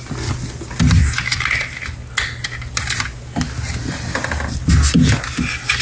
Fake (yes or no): no